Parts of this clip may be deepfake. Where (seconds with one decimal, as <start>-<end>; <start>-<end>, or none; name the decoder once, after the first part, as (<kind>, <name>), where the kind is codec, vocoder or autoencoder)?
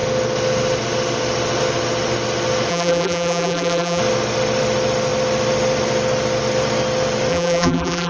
2.7-4.0 (vocoder, BigVGAN v2); 7.3-8.1